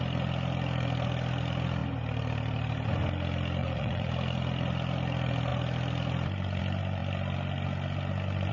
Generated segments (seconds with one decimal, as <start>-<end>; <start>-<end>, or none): 3.6-4.1